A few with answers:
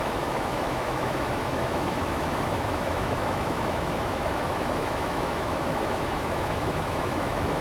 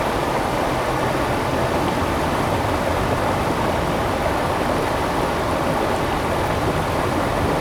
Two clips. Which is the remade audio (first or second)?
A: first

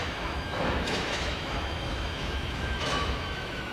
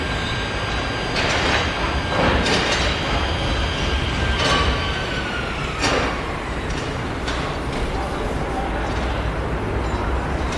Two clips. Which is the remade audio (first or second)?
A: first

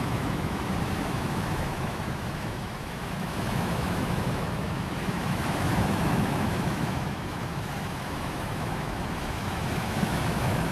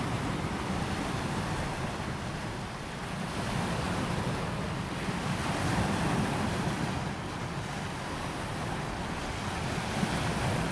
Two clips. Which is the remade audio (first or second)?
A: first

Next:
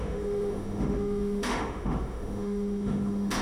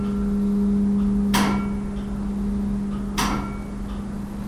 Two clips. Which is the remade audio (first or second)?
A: first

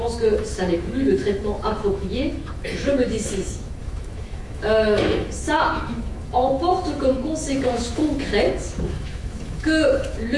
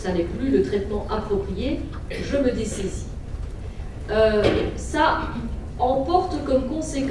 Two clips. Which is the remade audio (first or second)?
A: first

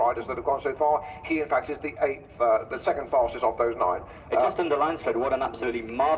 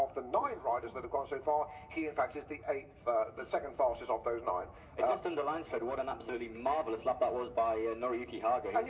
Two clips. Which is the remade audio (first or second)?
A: second